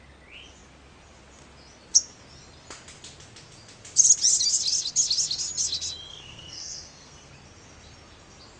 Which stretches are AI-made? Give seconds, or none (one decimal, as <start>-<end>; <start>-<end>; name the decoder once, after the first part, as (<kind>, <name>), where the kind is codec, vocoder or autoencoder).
6.1-7.3 (codec, SNAC)

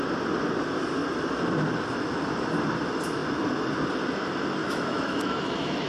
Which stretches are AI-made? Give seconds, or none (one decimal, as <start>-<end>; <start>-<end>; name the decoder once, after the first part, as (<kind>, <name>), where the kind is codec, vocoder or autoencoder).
4.6-5.9 (autoencoder, DAC-VAE)

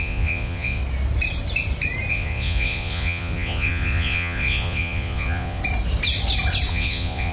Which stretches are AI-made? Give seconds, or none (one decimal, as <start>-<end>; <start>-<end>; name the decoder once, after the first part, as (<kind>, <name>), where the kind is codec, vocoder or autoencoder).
0.0-0.8 (vocoder, Vocos); 2.1-5.6; 6.7-7.3

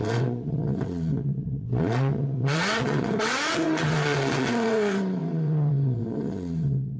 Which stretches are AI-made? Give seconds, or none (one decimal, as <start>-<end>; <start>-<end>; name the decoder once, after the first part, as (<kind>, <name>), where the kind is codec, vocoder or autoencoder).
0.0-7.0 (vocoder, WaveNeXt)